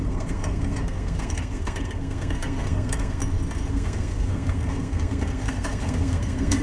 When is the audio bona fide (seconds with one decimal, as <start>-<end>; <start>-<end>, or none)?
3.2-3.7